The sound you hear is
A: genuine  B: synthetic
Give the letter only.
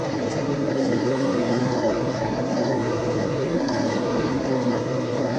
B